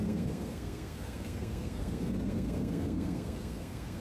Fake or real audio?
fake